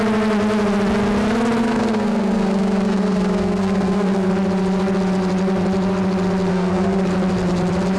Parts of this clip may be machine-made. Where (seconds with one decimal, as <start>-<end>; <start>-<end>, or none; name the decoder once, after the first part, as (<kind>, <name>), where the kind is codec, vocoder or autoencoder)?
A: 1.6-4.3 (codec, SNAC); 6.5-7.0